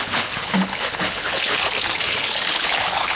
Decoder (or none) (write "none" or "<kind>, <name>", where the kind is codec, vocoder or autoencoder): codec, HILCodec